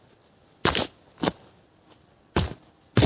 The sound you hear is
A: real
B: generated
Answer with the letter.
A